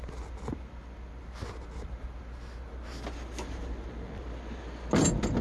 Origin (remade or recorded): recorded